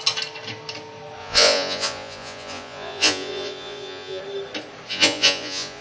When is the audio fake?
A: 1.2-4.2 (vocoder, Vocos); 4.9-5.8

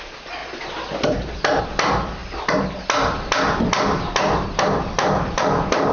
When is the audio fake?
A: 0.0-5.9 (vocoder, BigVGAN v2)